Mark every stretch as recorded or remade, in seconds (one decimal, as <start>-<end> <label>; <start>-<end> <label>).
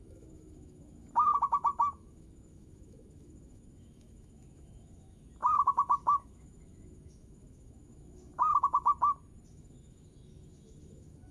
0.0-8.9 remade; 8.9-9.5 recorded; 9.5-11.3 remade